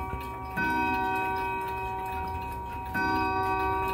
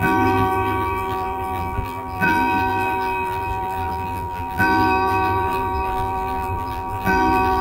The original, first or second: first